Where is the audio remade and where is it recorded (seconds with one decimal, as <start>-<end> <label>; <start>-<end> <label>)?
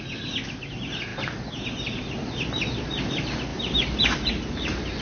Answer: 0.0-1.1 recorded; 1.1-2.8 remade; 2.8-3.5 recorded; 3.5-4.3 remade; 4.3-5.0 recorded